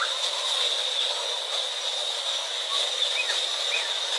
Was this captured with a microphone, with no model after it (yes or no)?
yes